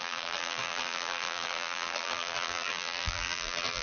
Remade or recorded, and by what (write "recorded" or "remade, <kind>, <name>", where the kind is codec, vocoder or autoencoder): remade, vocoder, BigVGAN v2